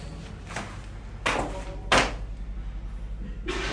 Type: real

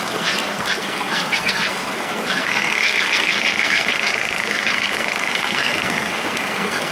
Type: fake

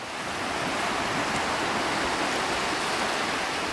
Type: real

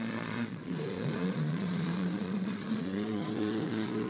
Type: fake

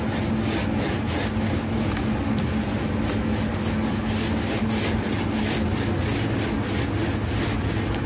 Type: real